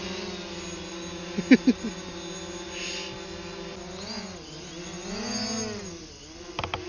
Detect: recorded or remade recorded